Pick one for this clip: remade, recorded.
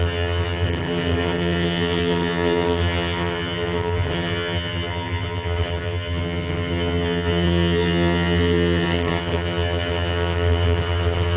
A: remade